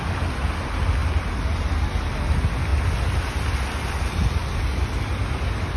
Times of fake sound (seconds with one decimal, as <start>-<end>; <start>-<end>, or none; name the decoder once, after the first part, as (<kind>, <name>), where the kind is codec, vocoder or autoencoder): none